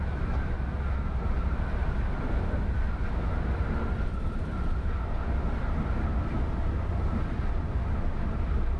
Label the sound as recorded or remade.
recorded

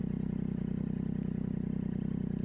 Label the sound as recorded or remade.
recorded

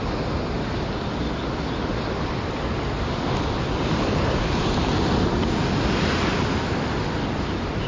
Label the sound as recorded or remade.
recorded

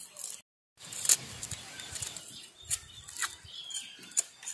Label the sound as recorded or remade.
recorded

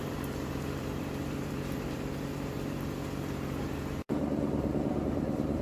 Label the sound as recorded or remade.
remade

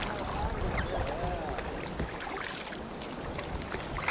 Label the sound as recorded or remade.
recorded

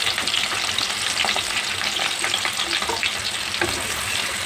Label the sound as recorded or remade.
recorded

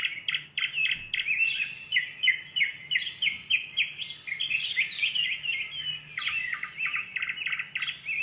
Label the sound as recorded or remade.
recorded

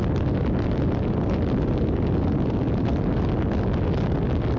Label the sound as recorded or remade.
recorded